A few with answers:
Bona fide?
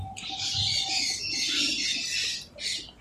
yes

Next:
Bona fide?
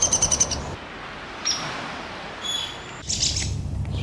yes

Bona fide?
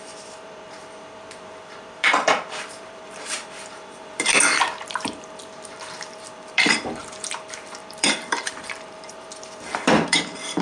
no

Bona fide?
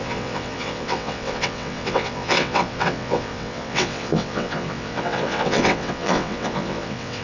no